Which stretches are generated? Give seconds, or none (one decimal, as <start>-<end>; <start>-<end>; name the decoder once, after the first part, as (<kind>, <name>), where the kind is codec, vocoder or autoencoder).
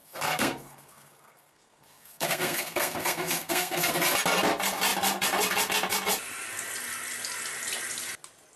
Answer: 0.0-3.9 (codec, SNAC)